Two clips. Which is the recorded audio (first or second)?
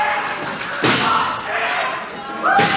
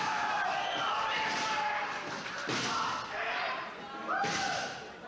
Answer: first